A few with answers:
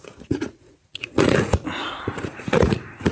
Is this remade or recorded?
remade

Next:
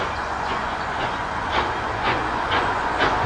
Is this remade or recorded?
remade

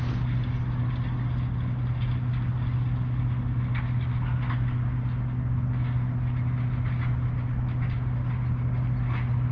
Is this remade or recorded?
recorded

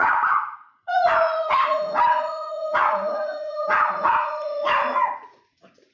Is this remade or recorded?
remade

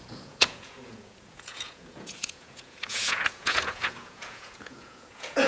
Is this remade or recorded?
remade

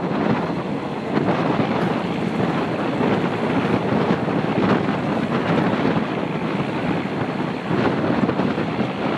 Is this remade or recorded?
recorded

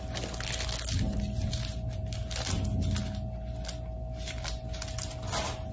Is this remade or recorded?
recorded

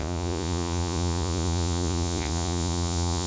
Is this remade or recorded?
remade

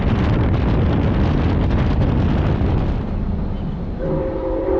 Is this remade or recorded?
recorded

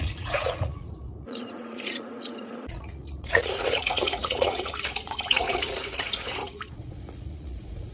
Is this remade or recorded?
remade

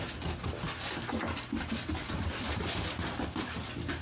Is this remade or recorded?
recorded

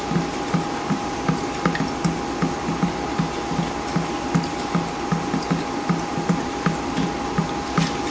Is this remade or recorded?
recorded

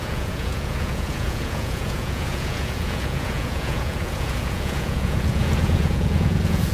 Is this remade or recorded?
remade